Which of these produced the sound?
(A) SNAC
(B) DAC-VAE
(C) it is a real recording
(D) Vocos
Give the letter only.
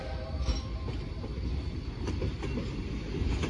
C